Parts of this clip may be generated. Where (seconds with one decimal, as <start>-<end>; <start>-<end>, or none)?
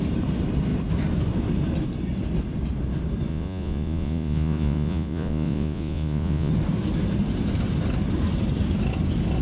3.3-6.5